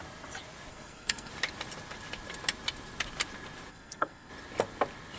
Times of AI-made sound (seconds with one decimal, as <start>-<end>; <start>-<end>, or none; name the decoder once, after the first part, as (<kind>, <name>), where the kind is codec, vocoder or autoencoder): 0.7-1.3 (codec, SNAC); 3.7-4.3